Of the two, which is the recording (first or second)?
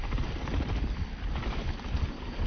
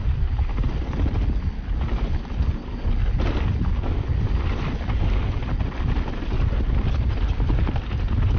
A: second